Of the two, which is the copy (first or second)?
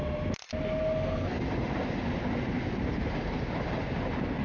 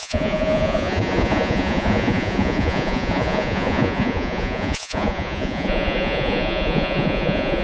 second